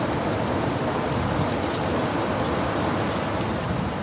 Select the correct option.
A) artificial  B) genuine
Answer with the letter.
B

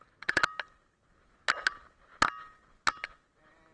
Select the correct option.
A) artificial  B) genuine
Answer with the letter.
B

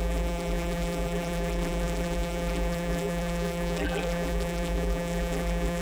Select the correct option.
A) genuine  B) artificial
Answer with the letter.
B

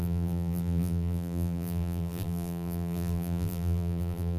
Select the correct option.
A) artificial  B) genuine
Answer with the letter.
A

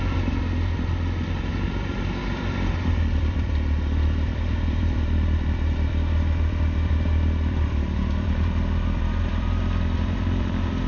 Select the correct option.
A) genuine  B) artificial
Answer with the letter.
B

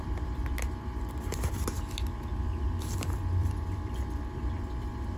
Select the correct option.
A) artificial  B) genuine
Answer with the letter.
A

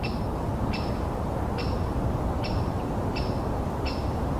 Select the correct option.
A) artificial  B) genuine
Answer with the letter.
A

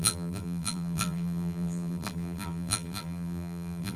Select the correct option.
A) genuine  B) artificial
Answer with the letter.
B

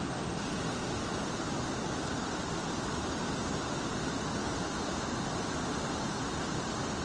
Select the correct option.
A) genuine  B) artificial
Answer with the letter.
A